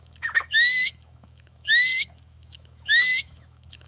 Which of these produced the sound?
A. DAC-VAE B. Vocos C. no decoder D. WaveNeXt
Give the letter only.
A